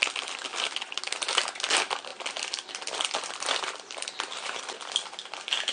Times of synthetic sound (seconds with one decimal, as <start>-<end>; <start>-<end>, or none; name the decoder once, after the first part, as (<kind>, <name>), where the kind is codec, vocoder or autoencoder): 2.1-4.6 (vocoder, BigVGAN v2)